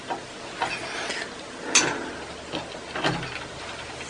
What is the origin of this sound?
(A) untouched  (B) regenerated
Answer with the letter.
A